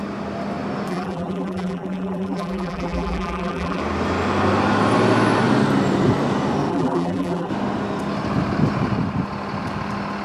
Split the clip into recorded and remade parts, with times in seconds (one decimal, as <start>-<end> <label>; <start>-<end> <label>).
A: 0.0-0.9 recorded; 0.9-3.8 remade; 3.8-6.7 recorded; 6.7-7.5 remade; 7.5-10.2 recorded